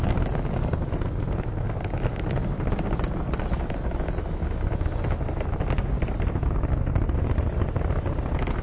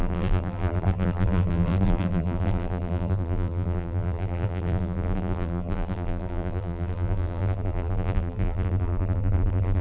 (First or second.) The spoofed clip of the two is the second